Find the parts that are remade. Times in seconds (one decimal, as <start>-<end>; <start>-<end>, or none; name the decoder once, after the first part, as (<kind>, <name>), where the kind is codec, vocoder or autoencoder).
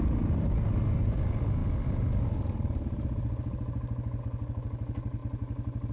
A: none